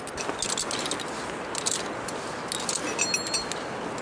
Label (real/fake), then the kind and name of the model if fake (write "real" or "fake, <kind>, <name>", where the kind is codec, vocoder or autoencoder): real